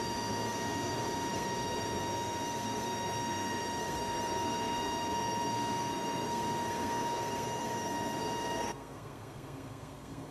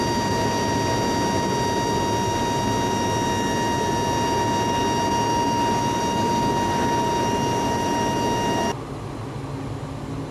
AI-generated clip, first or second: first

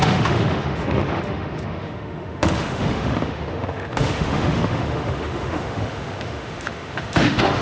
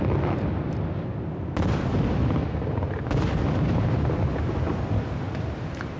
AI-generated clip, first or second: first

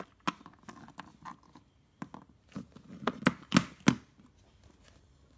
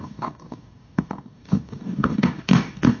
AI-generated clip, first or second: second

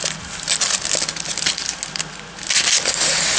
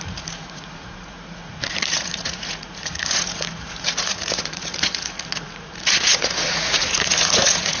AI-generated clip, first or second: second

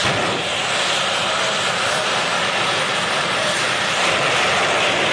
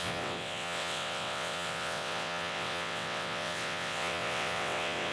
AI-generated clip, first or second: second